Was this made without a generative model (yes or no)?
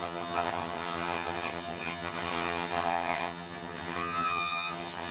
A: no